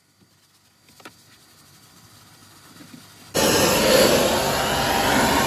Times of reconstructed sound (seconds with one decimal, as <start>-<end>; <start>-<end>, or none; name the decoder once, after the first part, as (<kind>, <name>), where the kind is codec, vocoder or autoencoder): none